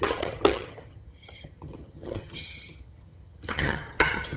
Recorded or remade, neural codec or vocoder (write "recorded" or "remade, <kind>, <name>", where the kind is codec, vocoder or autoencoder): remade, vocoder, HiFi-GAN